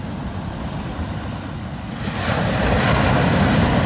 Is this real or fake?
real